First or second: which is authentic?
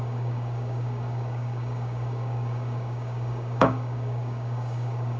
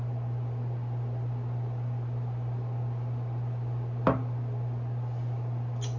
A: second